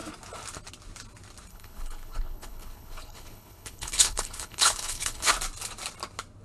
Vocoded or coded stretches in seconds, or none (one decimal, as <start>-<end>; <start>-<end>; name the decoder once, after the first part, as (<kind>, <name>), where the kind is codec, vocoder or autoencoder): 1.5-5.3 (codec, HILCodec)